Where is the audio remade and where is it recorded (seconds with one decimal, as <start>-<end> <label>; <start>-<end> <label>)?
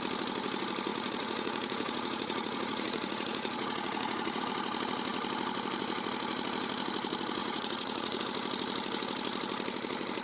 0.0-0.9 recorded; 0.9-4.4 remade; 4.4-7.4 recorded; 7.4-8.2 remade; 8.2-10.2 recorded